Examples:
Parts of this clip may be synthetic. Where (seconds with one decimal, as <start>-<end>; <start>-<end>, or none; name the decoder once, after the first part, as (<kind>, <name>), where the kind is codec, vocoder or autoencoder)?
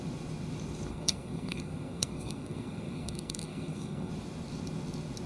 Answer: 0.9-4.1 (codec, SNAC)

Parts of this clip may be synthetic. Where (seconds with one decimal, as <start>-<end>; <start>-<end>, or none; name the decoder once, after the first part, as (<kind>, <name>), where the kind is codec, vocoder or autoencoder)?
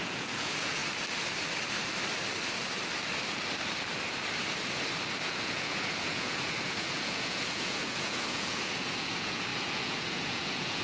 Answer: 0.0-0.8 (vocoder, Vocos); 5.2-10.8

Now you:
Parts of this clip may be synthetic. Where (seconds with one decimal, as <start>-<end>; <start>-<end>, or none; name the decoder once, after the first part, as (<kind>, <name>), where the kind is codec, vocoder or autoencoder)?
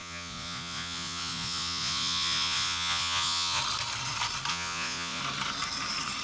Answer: 0.0-3.6 (vocoder, Vocos); 4.5-5.2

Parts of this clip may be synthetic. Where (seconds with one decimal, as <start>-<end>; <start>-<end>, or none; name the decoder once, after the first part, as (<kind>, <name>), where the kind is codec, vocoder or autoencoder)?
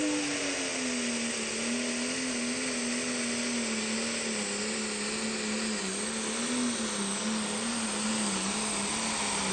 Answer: none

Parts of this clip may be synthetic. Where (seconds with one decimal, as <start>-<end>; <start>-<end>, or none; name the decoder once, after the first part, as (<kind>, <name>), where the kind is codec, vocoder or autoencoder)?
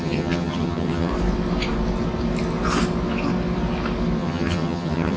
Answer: 0.0-1.1 (vocoder, HiFi-GAN); 4.2-5.2